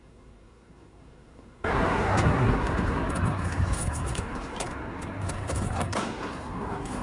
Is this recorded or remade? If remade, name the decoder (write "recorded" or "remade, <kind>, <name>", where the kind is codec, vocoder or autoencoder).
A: remade, codec, SNAC